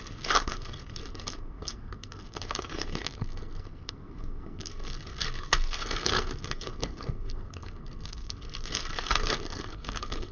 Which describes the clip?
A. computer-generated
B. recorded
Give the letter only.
A